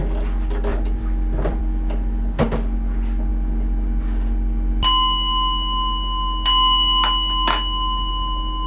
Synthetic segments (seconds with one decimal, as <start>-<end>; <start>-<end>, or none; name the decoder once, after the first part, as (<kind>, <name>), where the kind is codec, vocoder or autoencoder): 0.7-1.6 (vocoder, BigVGAN v2)